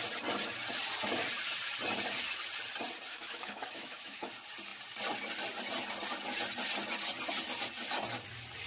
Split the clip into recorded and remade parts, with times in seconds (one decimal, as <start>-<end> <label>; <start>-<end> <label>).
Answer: 0.0-3.1 recorded; 3.1-4.3 remade; 4.3-8.7 recorded